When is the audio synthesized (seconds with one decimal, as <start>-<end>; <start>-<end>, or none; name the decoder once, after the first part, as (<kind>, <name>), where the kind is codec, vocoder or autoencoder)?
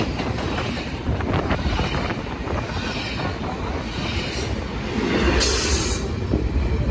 0.0-2.1 (vocoder, BigVGAN v2); 5.8-6.9